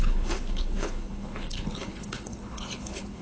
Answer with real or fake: fake